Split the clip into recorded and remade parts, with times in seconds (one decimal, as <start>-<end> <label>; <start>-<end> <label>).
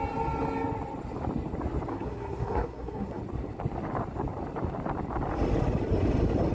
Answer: 0.0-1.9 recorded; 1.9-3.2 remade; 3.2-6.5 recorded